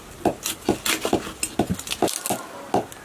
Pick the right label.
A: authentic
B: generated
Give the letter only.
A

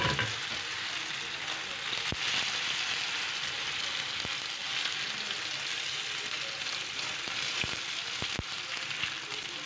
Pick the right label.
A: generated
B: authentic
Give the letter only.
B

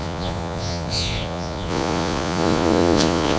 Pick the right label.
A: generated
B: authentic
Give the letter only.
A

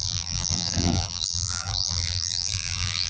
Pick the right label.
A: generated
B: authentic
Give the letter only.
A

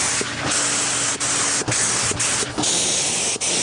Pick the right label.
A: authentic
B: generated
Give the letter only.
A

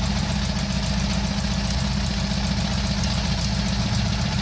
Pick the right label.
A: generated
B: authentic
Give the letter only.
B